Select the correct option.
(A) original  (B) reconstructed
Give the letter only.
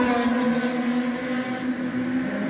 A